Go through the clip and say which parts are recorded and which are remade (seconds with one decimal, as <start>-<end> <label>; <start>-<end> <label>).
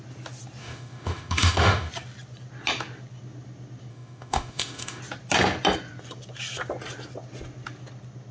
0.0-0.6 recorded; 0.6-1.9 remade; 1.9-3.9 recorded; 3.9-5.0 remade; 5.0-8.3 recorded